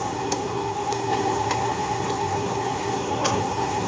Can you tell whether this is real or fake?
fake